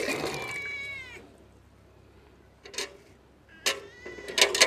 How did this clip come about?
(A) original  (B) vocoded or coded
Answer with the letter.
A